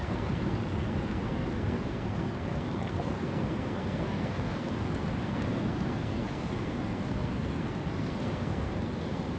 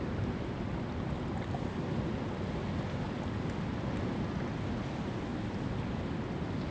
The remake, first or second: first